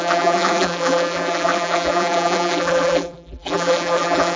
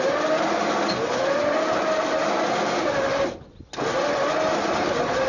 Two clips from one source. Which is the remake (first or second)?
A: first